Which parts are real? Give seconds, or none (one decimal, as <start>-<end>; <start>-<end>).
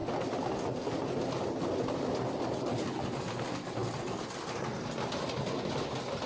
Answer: 0.0-6.3